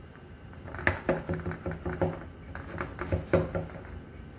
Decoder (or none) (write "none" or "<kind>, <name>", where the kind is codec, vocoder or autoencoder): none